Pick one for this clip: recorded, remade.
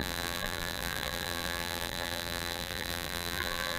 remade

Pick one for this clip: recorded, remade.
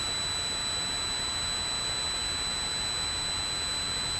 recorded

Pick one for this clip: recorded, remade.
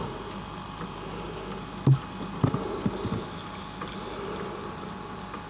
recorded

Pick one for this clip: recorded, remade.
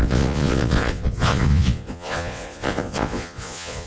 remade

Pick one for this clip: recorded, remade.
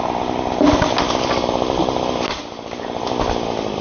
recorded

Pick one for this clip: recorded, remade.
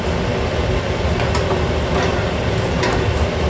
recorded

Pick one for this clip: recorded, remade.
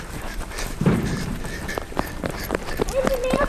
remade